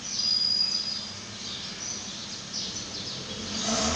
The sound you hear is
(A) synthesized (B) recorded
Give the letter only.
B